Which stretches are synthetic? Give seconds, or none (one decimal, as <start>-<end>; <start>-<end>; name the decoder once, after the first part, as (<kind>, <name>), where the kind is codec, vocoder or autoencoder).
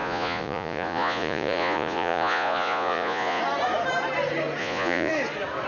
0.0-3.4 (vocoder, Vocos); 4.6-5.1